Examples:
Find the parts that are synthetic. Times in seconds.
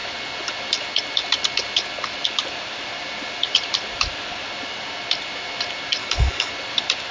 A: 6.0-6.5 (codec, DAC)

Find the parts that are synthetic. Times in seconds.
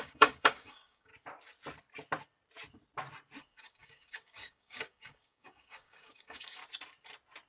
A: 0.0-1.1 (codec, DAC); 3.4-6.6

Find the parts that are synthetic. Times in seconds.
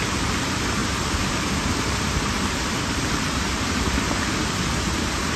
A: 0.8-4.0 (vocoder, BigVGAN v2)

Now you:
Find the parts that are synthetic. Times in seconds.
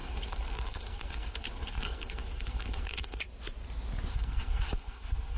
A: 0.0-3.2 (codec, SNAC); 4.1-5.4